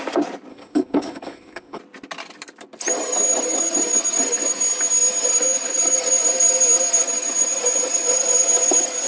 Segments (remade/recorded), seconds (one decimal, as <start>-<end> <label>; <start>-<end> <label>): 0.0-0.5 recorded; 0.5-1.8 remade; 1.8-9.1 recorded